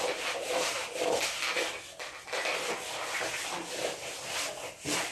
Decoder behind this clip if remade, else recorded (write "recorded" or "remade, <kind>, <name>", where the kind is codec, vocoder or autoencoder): recorded